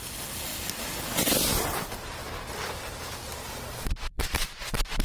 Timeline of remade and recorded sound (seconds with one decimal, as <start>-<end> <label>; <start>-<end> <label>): 0.0-0.5 remade; 0.5-1.8 recorded; 1.8-2.2 remade; 2.2-3.6 recorded; 3.6-5.0 remade